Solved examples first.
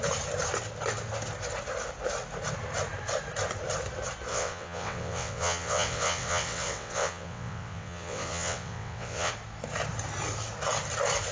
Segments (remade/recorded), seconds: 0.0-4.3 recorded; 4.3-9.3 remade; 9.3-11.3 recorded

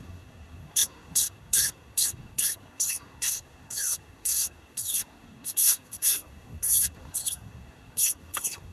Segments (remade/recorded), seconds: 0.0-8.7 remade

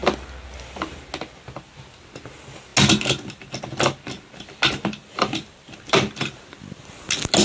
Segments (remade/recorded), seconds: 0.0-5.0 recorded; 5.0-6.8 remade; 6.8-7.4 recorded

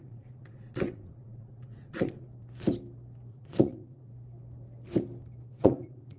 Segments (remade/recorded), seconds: 0.0-2.3 remade; 2.3-3.3 recorded; 3.3-4.1 remade; 4.1-5.5 recorded; 5.5-6.2 remade

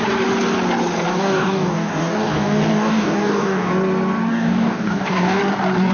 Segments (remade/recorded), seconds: 0.0-1.1 recorded; 1.1-3.7 remade; 3.7-4.3 recorded; 4.3-5.4 remade; 5.4-5.9 recorded

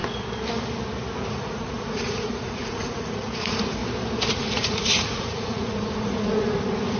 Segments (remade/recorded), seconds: 0.0-1.3 recorded; 1.3-3.8 remade; 3.8-4.3 recorded; 4.3-7.0 remade

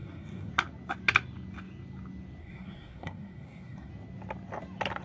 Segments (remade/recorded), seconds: 0.0-0.5 remade; 0.5-2.4 recorded; 2.4-3.9 remade; 3.9-5.0 recorded